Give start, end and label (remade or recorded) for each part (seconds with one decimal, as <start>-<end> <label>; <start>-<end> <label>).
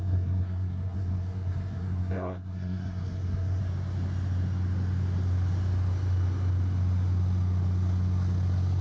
0.0-3.6 remade; 3.6-8.8 recorded